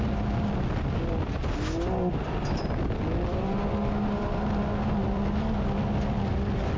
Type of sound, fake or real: real